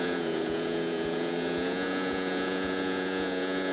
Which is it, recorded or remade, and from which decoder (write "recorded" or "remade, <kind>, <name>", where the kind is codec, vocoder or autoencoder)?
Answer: remade, vocoder, Vocos